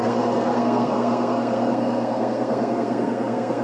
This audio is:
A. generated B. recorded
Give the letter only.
A